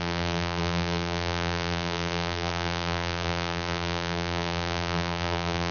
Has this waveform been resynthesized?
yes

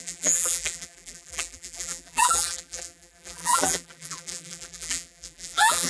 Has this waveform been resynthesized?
yes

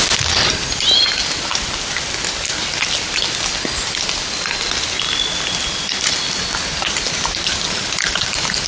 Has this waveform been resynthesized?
no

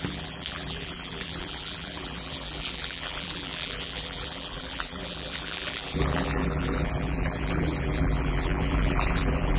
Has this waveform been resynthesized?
yes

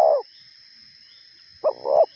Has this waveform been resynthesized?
no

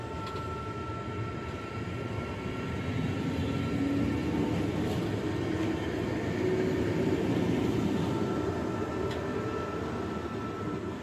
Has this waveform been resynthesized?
no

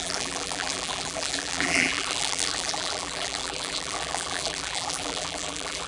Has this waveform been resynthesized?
yes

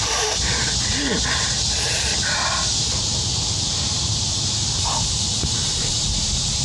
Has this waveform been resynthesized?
yes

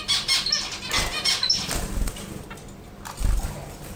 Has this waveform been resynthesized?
no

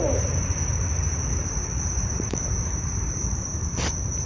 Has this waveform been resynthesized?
yes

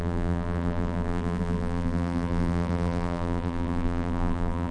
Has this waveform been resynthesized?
yes